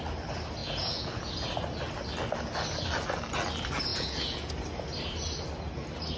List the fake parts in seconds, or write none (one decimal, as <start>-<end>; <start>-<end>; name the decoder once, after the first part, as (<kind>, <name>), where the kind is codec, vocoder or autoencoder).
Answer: 0.6-1.3 (vocoder, Vocos); 3.9-4.5

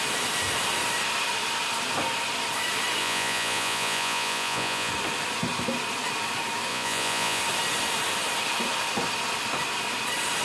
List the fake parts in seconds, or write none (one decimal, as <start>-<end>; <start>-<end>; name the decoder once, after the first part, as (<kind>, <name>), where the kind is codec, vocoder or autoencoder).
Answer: 3.0-4.9 (vocoder, Vocos); 6.7-7.4

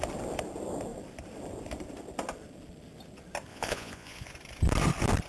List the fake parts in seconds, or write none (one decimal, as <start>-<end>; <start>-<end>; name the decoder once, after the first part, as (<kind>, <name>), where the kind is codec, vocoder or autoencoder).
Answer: 3.5-4.3 (vocoder, Vocos)

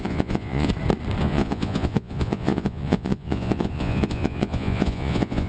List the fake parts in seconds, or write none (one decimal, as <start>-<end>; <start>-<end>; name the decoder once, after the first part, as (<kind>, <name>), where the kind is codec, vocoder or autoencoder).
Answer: 0.0-0.7 (vocoder, Vocos); 1.2-5.5